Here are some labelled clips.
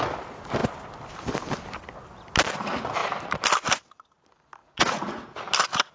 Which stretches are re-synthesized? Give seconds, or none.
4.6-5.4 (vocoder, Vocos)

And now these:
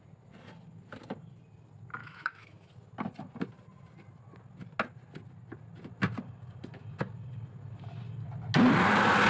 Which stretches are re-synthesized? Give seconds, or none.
2.0-2.7 (autoencoder, DAC-VAE)

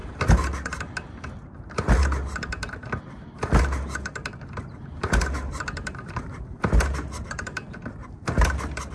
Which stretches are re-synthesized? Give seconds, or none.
none